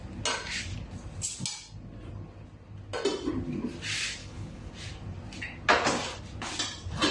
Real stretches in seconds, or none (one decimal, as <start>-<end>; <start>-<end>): 0.0-4.2; 4.7-7.1